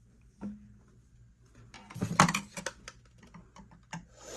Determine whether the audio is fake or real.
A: real